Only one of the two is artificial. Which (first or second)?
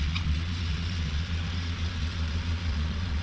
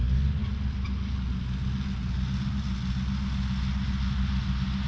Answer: first